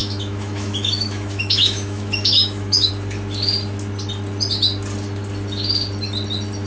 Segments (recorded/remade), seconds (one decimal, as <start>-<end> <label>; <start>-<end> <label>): 0.0-2.9 remade; 2.9-6.7 recorded